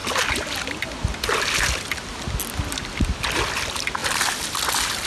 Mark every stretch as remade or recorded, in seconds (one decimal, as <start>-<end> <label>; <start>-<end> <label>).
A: 0.0-5.1 recorded